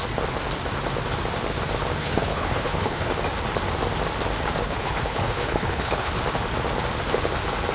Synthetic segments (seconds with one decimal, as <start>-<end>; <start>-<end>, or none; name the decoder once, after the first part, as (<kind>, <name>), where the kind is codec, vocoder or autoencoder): 2.0-3.1 (codec, HILCodec); 4.6-6.1

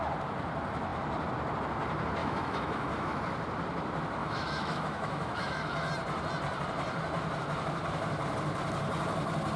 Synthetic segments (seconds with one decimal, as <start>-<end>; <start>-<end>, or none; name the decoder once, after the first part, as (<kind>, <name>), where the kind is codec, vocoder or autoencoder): 2.2-3.2 (autoencoder, DAC-VAE); 4.2-5.9

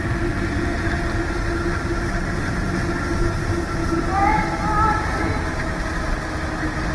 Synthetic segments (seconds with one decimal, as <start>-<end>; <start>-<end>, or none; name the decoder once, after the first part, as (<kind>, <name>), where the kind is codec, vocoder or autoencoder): 3.8-4.4 (vocoder, Vocos)

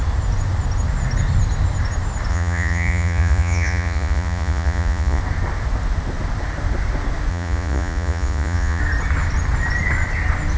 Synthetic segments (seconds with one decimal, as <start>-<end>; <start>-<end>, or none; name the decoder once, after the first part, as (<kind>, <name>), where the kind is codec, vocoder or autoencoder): 2.3-5.2 (vocoder, Vocos); 7.3-8.8

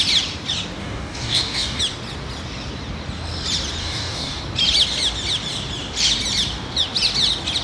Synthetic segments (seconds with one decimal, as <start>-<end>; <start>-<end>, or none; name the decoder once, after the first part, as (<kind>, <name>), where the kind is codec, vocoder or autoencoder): 0.8-1.8 (codec, DAC); 3.8-4.4

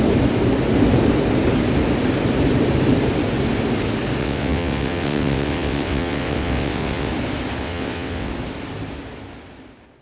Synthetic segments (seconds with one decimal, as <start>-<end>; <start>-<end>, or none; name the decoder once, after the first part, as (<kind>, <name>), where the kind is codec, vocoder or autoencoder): 4.2-7.1 (vocoder, WaveNeXt); 7.6-8.3